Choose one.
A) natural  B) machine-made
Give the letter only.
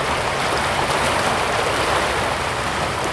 A